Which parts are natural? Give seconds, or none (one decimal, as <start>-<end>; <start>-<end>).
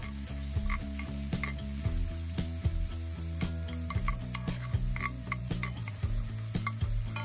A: 0.0-7.2